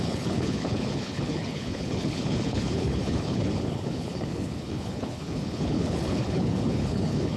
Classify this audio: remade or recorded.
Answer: remade